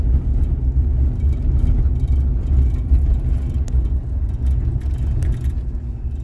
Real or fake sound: real